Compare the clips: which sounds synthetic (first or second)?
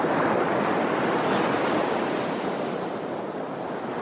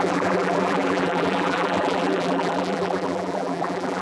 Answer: second